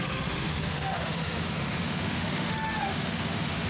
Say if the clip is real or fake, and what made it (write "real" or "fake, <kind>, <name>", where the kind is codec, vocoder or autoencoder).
fake, autoencoder, DAC-VAE